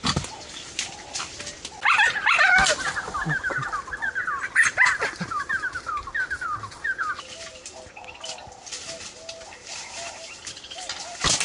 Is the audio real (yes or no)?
yes